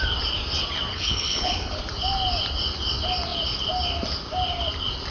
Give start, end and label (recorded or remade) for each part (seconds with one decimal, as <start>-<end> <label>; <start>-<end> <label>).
0.0-0.9 recorded; 0.9-1.8 remade; 1.8-5.1 recorded